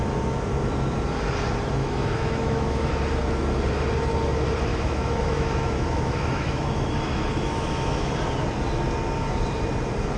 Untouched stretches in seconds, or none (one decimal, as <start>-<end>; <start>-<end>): 0.0-1.8; 2.9-4.7; 8.1-10.2

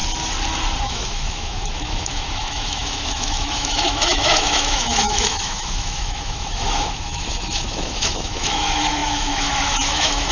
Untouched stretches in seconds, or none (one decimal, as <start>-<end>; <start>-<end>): 0.0-0.8

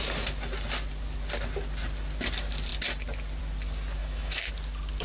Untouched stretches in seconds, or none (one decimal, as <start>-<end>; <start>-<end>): 0.0-4.0; 4.5-5.0

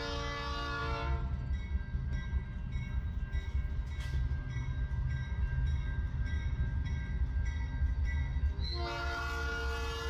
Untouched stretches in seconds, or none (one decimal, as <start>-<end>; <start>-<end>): 0.0-10.1